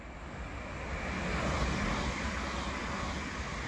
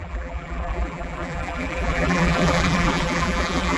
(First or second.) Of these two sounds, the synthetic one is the second